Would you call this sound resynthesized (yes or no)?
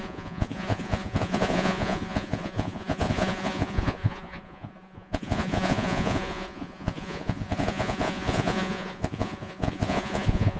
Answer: yes